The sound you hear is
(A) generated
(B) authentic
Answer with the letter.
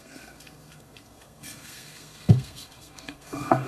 A